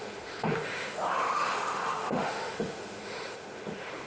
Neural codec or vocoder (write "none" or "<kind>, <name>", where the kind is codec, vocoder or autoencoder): autoencoder, DAC-VAE